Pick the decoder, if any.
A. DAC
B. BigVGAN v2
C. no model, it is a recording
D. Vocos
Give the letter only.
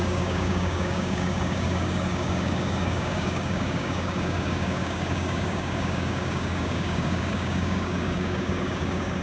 A